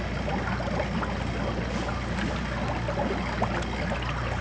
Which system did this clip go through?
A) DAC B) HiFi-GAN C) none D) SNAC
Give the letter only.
C